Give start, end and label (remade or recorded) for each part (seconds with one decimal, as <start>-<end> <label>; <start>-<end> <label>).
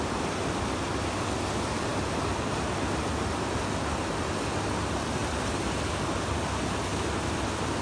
0.0-7.8 recorded